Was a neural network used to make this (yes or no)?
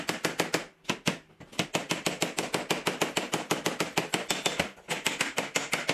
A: no